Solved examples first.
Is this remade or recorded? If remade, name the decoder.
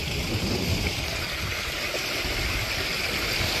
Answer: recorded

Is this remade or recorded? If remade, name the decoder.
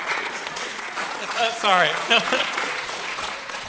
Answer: remade, vocoder, Vocos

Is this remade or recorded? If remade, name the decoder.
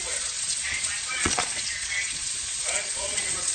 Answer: remade, vocoder, Vocos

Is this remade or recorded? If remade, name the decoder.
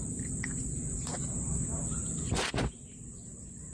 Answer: recorded